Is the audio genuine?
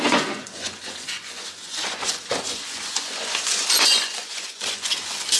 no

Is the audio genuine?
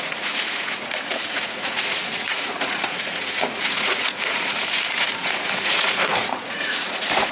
no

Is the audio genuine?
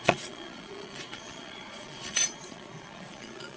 no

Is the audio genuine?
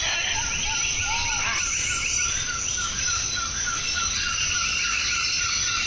yes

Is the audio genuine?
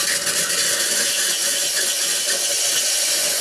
no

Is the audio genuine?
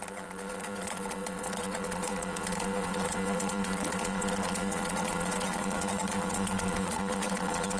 no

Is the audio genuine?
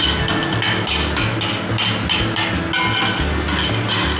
yes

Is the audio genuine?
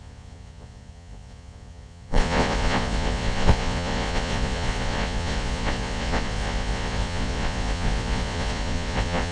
no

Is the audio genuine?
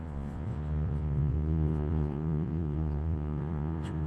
no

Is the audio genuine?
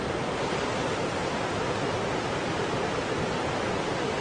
yes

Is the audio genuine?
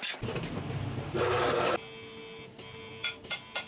yes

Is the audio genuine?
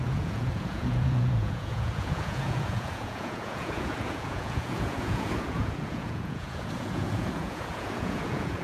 no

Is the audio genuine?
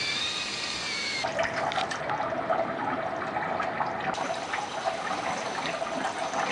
yes